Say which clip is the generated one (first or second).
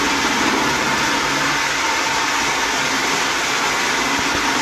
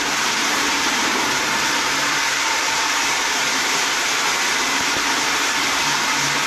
second